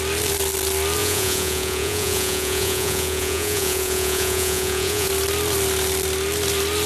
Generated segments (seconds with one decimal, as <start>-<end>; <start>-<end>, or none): 1.0-5.1